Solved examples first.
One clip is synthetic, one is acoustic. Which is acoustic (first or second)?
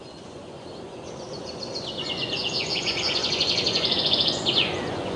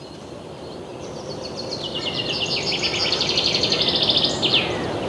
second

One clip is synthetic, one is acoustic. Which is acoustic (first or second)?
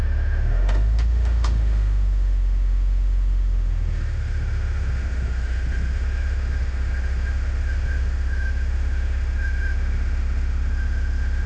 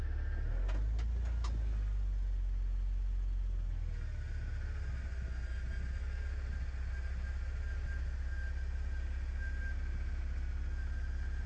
second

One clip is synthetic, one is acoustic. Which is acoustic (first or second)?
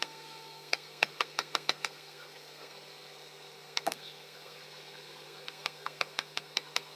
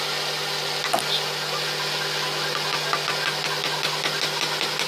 second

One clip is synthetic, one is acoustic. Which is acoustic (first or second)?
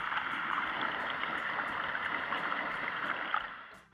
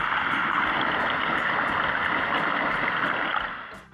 second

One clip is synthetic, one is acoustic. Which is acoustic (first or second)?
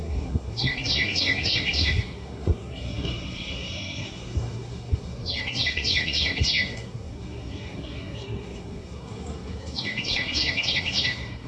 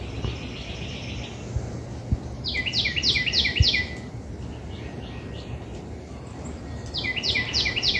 second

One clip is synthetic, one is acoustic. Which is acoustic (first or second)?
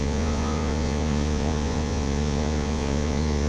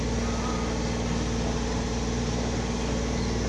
second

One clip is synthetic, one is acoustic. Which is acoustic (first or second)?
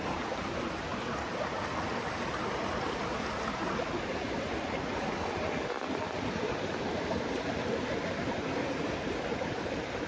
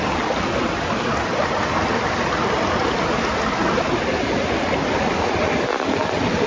second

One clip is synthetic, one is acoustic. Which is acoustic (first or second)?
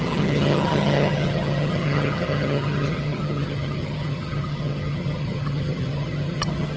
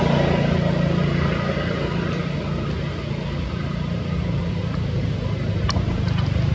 second